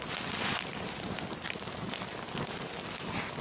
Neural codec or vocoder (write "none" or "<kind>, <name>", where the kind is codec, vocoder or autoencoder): none